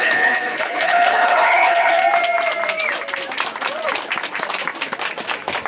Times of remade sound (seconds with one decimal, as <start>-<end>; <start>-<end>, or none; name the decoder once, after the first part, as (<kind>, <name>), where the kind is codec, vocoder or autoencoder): 0.0-2.0 (codec, HILCodec)